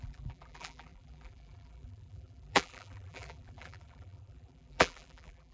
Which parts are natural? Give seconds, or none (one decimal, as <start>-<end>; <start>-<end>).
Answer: none